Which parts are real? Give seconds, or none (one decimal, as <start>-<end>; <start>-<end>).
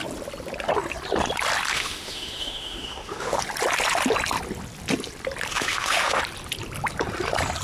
0.0-1.7; 3.4-5.5; 6.2-7.6